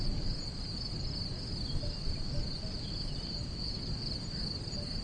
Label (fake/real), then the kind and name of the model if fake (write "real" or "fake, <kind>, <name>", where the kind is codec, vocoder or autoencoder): real